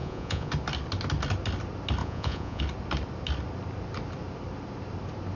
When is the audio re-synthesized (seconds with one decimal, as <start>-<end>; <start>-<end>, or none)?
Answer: 0.0-0.5; 2.0-2.6